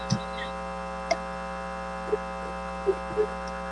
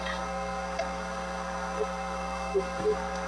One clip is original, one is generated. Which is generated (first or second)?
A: second